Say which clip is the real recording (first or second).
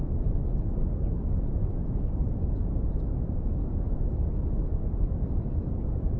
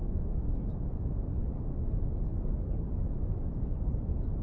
second